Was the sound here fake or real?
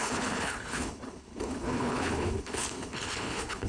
fake